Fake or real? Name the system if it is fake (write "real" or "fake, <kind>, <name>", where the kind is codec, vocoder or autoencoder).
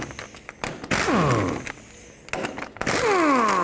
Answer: real